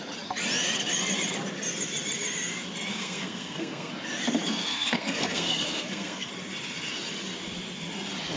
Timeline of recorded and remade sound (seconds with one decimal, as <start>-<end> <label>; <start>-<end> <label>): 0.0-2.9 recorded; 2.9-3.9 remade; 3.9-4.5 recorded; 4.5-6.3 remade; 6.3-8.4 recorded